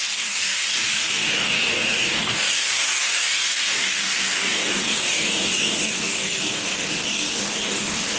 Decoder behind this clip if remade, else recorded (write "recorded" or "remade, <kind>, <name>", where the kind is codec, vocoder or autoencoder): remade, codec, DAC